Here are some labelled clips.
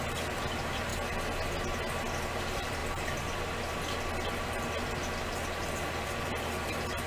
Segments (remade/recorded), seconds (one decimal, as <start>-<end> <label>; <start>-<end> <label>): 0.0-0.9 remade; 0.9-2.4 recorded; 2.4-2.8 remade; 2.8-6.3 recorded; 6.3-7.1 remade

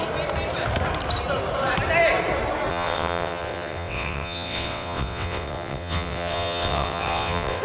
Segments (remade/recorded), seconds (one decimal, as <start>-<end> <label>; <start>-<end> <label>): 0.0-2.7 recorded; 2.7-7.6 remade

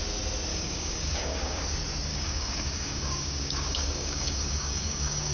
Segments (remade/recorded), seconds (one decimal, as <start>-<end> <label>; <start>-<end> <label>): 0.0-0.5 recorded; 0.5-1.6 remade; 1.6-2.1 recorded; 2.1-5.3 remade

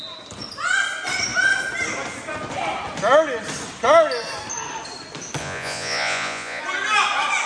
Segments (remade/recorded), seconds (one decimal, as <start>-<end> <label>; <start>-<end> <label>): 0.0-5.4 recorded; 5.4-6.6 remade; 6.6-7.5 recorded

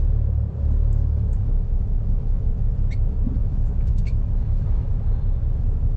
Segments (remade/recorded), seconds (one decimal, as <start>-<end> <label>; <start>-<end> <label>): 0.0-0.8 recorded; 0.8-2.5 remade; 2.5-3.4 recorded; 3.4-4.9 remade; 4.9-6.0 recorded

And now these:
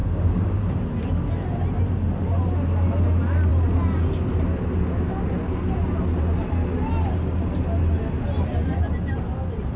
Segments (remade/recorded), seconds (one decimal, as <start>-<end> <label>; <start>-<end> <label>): 0.0-0.7 remade; 0.7-9.8 recorded

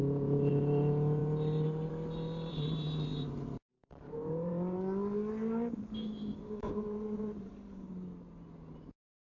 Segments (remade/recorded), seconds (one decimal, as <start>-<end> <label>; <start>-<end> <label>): 0.0-1.2 recorded; 1.2-1.9 remade; 1.9-3.1 recorded; 3.1-4.5 remade; 4.5-6.6 recorded; 6.6-7.5 remade; 7.5-9.3 recorded